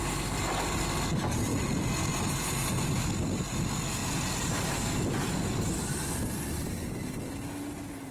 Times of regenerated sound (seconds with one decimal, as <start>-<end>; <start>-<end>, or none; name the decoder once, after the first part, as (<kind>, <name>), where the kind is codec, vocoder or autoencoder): none